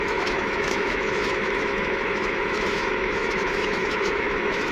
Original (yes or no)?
no